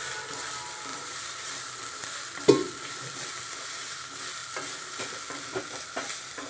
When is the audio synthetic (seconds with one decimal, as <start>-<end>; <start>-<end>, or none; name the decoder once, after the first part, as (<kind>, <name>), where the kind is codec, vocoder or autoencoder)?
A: 0.9-1.5 (vocoder, BigVGAN v2)